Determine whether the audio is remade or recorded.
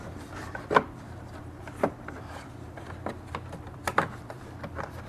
remade